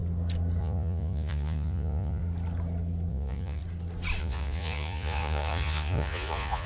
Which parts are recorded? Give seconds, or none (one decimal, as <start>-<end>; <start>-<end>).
0.0-0.6; 2.2-3.1; 3.6-4.2